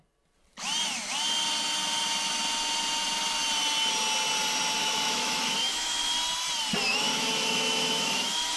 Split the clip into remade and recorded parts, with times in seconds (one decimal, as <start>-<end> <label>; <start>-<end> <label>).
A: 0.0-4.8 recorded; 4.8-6.1 remade; 6.1-6.9 recorded; 6.9-8.6 remade